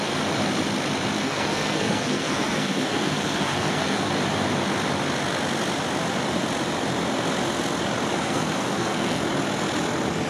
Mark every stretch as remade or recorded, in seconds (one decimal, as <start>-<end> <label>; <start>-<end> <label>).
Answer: 0.0-1.2 recorded; 1.2-4.1 remade; 4.1-8.1 recorded; 8.1-9.2 remade; 9.2-10.3 recorded